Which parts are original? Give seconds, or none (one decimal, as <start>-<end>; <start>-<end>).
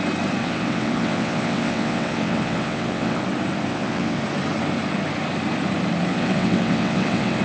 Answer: 0.0-0.4; 3.2-3.7; 4.2-6.1